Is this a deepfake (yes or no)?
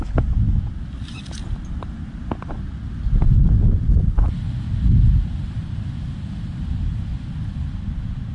no